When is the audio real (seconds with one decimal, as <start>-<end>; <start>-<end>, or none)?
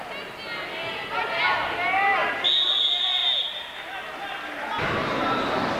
0.0-5.8